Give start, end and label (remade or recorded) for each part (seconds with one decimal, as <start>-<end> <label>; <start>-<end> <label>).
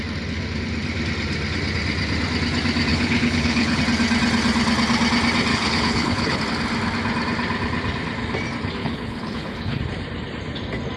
0.0-2.9 recorded; 2.9-3.8 remade; 3.8-5.5 recorded; 5.5-6.4 remade; 6.4-8.8 recorded; 8.8-9.8 remade; 9.8-11.0 recorded